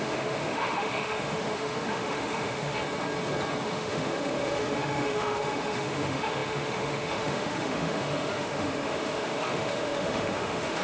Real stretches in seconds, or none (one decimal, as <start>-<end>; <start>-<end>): 2.8-3.6